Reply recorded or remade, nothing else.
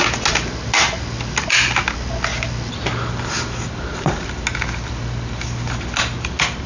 recorded